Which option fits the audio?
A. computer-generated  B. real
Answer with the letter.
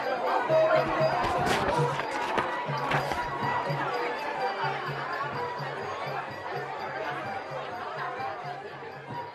A